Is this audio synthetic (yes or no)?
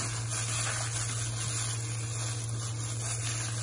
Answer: no